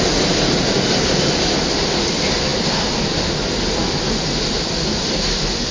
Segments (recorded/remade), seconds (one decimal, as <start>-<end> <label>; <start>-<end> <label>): 0.0-5.7 recorded